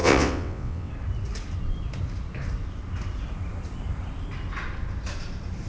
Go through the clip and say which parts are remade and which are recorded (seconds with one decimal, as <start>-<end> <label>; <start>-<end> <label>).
0.0-0.9 remade; 0.9-5.7 recorded